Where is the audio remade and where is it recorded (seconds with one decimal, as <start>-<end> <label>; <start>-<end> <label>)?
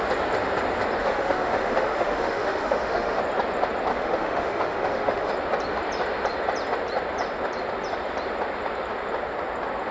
0.0-1.0 recorded; 1.0-3.2 remade; 3.2-3.9 recorded; 3.9-5.3 remade; 5.3-9.9 recorded